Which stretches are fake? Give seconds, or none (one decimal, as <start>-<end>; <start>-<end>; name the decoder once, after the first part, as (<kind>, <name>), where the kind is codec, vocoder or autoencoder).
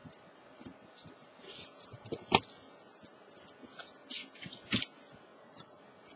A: 5.3-5.8 (vocoder, Vocos)